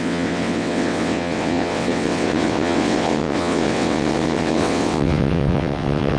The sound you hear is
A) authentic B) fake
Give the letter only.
B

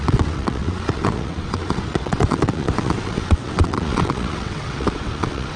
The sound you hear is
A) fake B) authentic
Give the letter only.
A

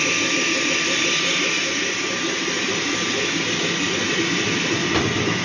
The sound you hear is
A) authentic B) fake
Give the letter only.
B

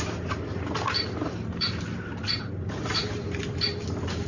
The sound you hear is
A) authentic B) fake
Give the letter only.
B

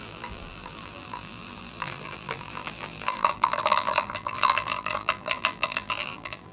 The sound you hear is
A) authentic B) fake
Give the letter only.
B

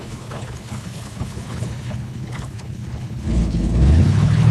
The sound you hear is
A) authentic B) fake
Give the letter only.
B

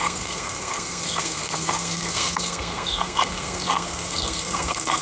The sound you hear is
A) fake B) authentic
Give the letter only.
A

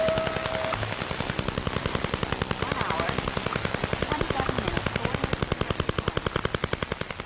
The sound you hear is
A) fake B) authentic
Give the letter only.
B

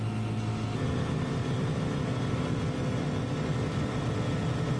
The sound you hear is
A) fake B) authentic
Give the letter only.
B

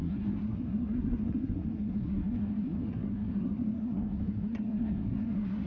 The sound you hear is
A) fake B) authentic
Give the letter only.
A